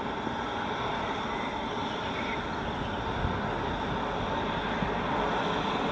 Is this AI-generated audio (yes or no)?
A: no